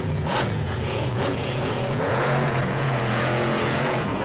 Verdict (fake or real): fake